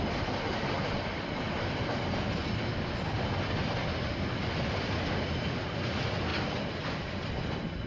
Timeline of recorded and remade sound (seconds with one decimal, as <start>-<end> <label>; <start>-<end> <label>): 0.0-7.9 recorded